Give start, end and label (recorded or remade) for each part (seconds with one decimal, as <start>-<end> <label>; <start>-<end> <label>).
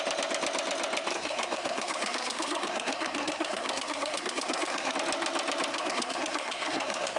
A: 0.0-1.1 recorded; 1.1-4.9 remade; 4.9-5.7 recorded; 5.7-7.2 remade